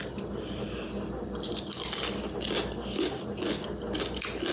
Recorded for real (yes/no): yes